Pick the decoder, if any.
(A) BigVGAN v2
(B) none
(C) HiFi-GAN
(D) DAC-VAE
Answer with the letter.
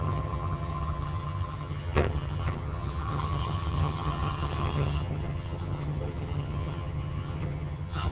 C